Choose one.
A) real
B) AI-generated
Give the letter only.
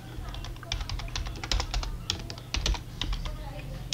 A